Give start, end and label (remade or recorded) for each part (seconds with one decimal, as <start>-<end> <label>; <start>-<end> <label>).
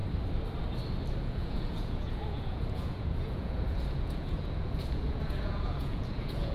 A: 0.0-1.2 recorded; 1.2-6.5 remade